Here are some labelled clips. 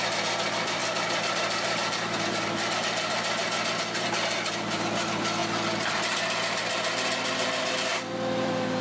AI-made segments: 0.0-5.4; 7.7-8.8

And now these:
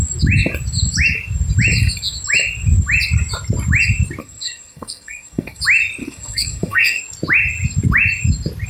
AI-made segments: 4.2-5.6; 6.0-7.0

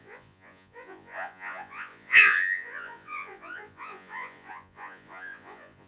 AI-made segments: 0.0-5.9

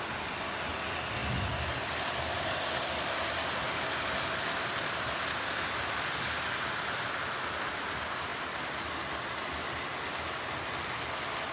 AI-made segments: none

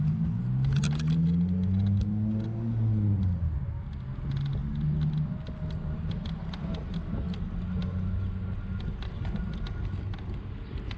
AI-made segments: none

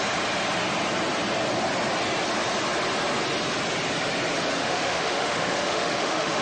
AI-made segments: 4.6-6.4

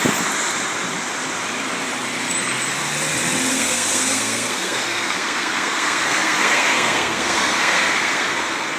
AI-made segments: 3.5-8.8

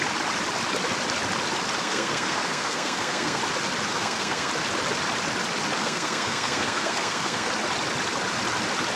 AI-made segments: 1.8-3.4; 3.9-4.5; 5.8-7.5